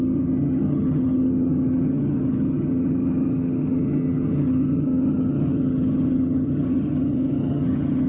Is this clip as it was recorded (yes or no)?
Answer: no